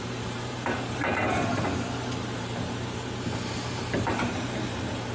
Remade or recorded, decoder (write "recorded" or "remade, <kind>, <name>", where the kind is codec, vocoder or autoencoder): remade, vocoder, BigVGAN v2